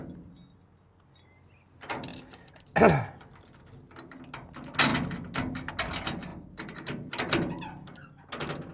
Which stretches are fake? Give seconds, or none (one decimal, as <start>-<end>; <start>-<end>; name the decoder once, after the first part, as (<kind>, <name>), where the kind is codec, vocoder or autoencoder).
2.1-2.7 (vocoder, BigVGAN v2); 6.3-7.1